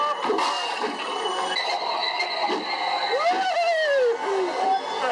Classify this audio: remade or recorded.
recorded